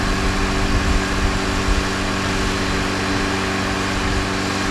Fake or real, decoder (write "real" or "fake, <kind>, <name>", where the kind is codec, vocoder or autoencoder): real